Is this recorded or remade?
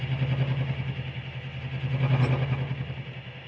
recorded